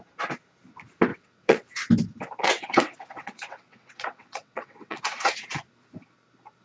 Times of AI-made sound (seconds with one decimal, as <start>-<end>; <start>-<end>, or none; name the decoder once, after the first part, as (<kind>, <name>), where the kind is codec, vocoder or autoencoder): 1.1-1.9 (vocoder, WaveNeXt); 2.4-5.5